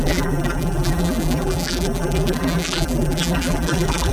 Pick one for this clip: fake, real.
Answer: fake